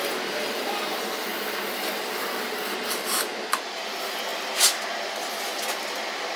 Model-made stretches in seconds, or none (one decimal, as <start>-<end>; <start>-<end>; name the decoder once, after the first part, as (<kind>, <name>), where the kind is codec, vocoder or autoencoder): none